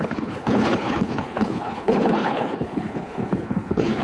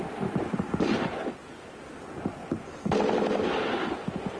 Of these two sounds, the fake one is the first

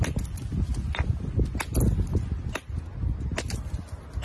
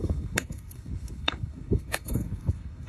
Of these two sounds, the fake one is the second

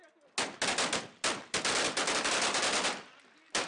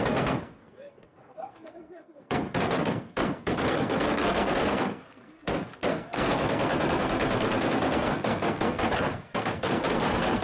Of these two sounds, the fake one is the second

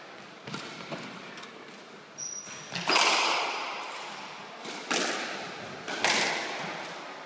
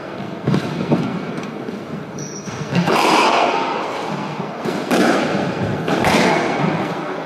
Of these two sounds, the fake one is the second